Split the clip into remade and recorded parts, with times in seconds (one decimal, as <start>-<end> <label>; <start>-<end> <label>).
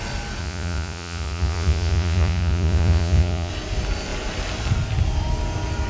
0.0-0.4 recorded; 0.4-3.5 remade; 3.5-5.9 recorded